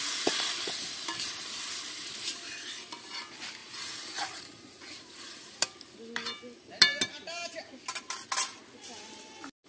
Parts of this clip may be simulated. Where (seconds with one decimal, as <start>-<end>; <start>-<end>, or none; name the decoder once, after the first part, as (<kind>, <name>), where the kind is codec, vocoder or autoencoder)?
3.6-5.6 (vocoder, Vocos)